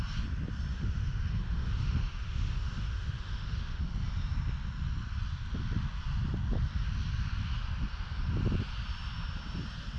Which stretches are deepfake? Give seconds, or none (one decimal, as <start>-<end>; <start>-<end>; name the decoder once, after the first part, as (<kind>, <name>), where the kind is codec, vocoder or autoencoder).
0.7-3.8 (autoencoder, DAC-VAE)